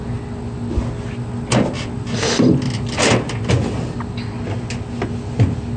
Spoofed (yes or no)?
no